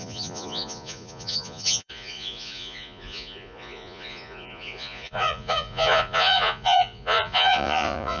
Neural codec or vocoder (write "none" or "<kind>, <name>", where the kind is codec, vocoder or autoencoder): vocoder, Vocos